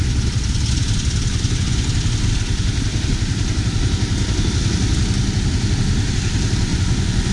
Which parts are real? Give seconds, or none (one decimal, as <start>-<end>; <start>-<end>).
0.0-1.3; 1.9-6.7